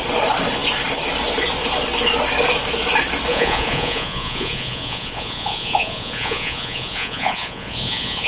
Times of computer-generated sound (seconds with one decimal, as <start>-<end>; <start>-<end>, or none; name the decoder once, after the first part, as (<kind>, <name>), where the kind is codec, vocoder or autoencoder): 3.3-8.3 (vocoder, Vocos)

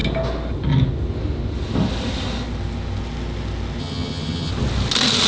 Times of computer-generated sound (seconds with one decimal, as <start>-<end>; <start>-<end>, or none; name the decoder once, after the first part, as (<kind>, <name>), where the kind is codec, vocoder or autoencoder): 3.8-4.5 (vocoder, HiFi-GAN)

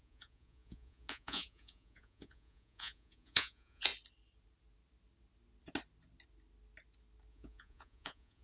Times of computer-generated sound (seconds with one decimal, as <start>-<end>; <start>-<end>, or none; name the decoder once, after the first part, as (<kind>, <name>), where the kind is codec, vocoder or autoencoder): 0.0-3.9 (vocoder, Vocos); 7.3-8.4